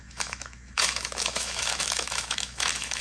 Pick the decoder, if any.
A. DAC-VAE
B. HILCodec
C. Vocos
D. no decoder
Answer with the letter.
A